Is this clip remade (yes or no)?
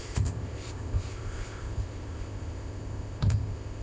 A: yes